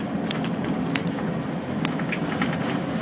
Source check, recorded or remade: recorded